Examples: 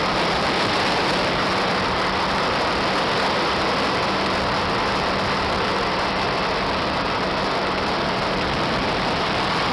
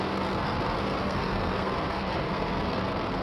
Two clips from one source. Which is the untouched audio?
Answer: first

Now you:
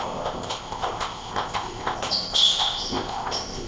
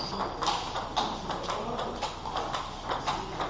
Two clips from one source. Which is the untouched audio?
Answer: second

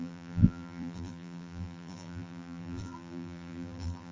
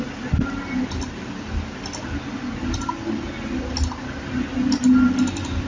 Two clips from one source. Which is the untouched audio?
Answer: second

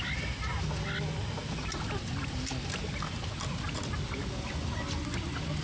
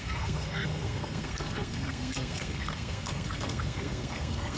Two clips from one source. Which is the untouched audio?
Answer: first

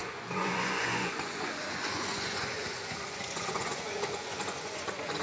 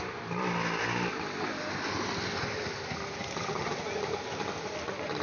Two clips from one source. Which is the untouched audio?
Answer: second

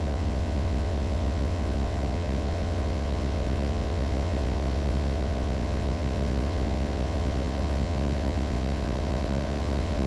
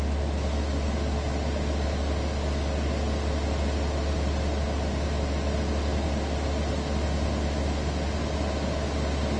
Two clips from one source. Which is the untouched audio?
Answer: second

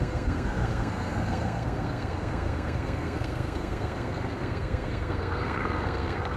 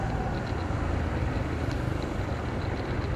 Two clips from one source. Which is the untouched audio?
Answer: second